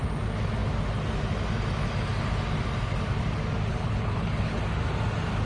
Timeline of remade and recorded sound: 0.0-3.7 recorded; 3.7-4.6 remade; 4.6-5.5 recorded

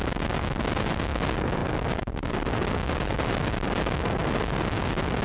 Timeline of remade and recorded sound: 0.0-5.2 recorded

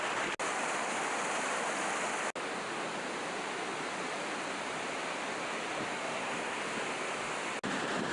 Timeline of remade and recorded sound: 0.0-5.9 recorded; 5.9-6.6 remade; 6.6-8.1 recorded